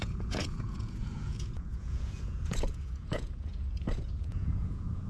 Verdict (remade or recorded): remade